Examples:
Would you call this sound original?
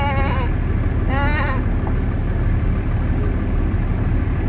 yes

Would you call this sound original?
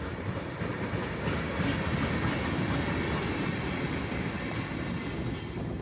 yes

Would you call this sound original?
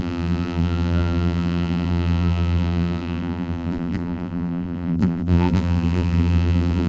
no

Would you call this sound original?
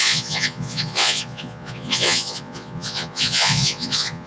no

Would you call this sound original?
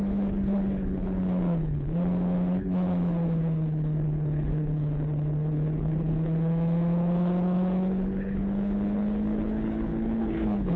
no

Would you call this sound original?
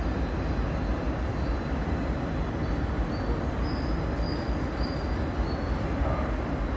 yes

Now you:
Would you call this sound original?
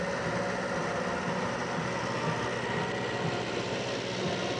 yes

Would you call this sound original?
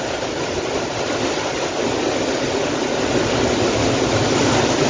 yes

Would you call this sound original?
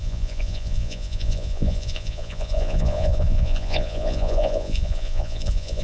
no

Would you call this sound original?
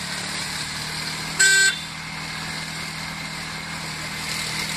yes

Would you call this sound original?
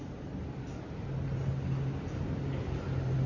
yes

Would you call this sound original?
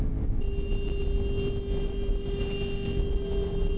yes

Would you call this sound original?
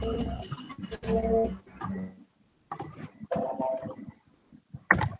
yes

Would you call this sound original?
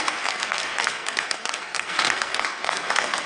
no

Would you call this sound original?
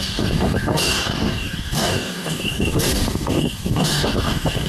no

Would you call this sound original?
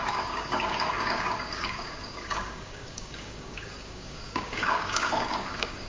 no